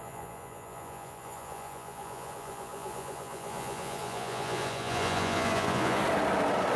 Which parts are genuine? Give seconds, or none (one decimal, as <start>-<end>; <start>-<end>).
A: 6.0-6.8